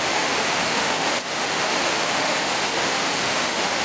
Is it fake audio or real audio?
fake